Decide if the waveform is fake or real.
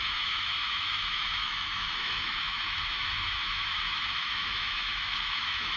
fake